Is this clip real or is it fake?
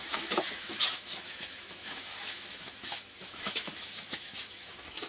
fake